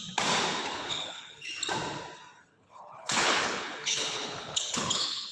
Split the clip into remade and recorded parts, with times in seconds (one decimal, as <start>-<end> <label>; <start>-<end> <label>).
0.0-0.6 recorded; 0.6-1.5 remade; 1.5-2.5 recorded; 2.5-5.3 remade